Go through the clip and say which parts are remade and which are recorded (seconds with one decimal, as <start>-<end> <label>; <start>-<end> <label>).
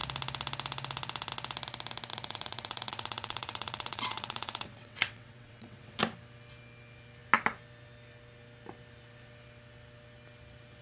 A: 0.0-2.1 recorded; 2.1-6.0 remade; 6.0-10.8 recorded